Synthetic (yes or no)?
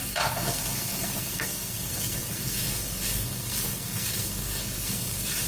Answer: yes